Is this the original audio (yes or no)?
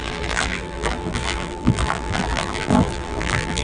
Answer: no